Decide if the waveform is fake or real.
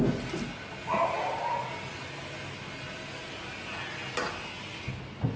real